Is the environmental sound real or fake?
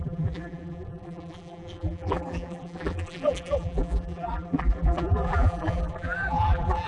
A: fake